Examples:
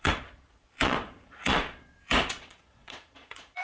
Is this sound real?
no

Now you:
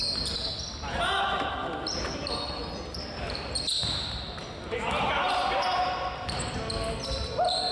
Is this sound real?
yes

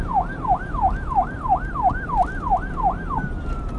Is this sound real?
no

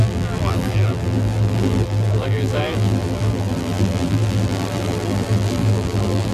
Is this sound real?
no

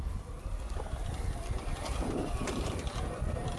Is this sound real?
yes